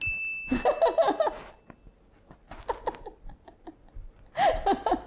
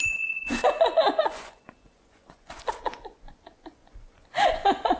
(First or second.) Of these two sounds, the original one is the first